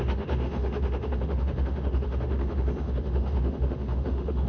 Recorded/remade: remade